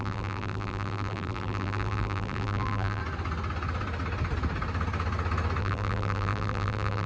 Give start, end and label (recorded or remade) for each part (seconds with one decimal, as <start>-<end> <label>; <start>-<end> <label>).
0.0-3.0 remade; 3.0-5.6 recorded; 5.6-7.1 remade